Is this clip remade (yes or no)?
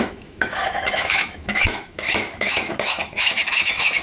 yes